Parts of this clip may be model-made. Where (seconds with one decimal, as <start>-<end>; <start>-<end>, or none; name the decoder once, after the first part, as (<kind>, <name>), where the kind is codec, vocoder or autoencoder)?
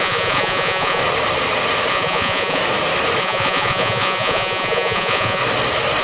0.0-1.0 (vocoder, Vocos); 1.9-2.6; 3.2-5.4